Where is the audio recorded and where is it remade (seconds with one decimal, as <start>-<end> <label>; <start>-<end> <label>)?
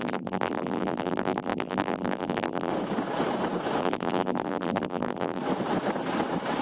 0.0-2.7 remade; 2.7-3.8 recorded; 3.8-5.4 remade; 5.4-6.6 recorded